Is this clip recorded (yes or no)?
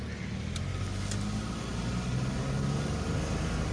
yes